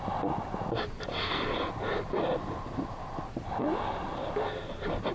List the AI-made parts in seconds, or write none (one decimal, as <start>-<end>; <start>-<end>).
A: 1.1-1.7